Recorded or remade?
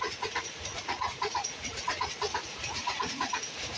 remade